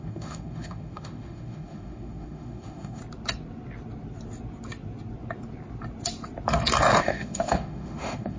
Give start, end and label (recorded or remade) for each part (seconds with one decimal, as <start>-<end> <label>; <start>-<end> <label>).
0.0-3.0 remade; 3.0-7.0 recorded; 7.0-8.4 remade

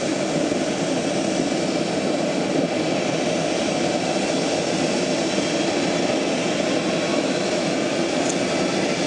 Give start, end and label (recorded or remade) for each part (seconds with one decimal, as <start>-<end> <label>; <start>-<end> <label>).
0.0-7.1 recorded; 7.1-7.7 remade; 7.7-9.1 recorded

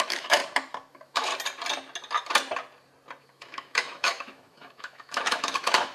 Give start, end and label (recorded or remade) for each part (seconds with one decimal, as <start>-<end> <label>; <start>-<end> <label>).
0.0-0.4 remade; 0.4-0.9 recorded; 0.9-1.3 remade; 1.3-3.2 recorded; 3.2-5.9 remade

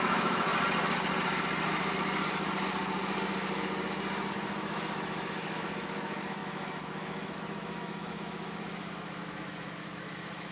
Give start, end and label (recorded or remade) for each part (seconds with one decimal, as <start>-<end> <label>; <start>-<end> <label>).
0.0-0.5 remade; 0.5-4.3 recorded; 4.3-10.5 remade

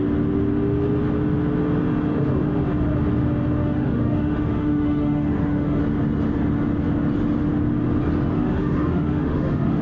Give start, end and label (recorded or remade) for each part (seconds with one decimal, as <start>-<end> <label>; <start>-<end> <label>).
0.0-3.6 recorded; 3.6-5.8 remade; 5.8-8.3 recorded; 8.3-9.8 remade

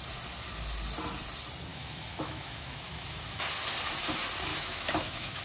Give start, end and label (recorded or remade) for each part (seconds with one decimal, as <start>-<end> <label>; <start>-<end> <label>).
0.0-1.7 recorded; 1.7-3.4 remade; 3.4-4.5 recorded; 4.5-5.4 remade

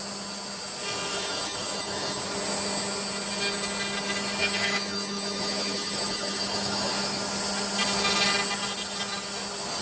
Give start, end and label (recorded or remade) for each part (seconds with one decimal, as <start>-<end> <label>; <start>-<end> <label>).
0.0-1.1 recorded; 1.1-2.2 remade; 2.2-4.4 recorded; 4.4-6.9 remade; 6.9-9.8 recorded

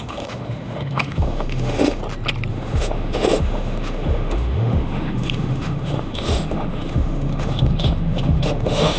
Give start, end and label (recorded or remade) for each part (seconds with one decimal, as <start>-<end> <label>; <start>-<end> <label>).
0.0-2.0 remade; 2.0-2.5 recorded; 2.5-9.0 remade